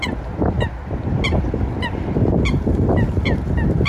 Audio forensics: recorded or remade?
recorded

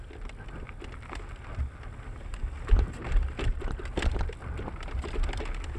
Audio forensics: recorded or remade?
recorded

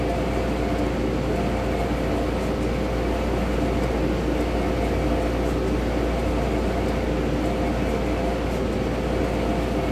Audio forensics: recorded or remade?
recorded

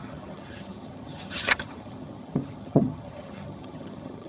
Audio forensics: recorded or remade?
remade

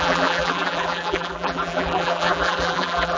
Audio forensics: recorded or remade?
remade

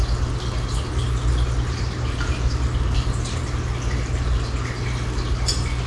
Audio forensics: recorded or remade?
recorded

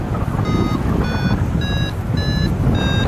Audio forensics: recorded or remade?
recorded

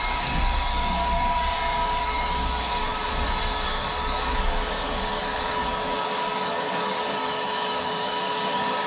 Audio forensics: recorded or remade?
remade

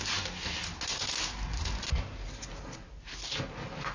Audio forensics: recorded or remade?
recorded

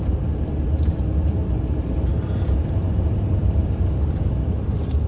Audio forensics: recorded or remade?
remade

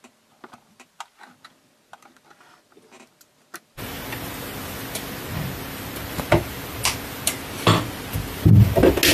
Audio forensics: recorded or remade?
recorded